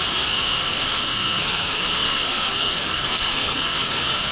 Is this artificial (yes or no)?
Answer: yes